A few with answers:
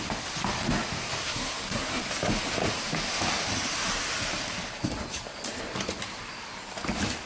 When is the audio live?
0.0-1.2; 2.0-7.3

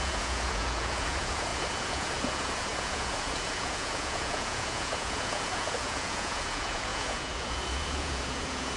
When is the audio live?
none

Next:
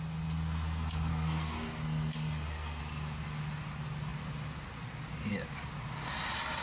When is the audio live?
0.0-1.1; 2.8-6.6